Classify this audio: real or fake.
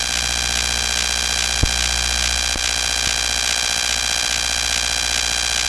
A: real